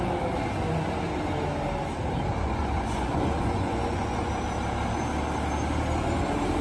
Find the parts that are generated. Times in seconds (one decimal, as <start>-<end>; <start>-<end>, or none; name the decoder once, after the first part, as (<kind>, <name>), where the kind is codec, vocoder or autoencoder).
2.3-4.3 (vocoder, Vocos)